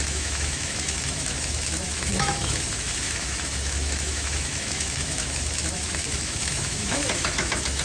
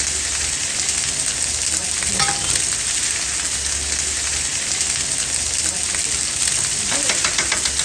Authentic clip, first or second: second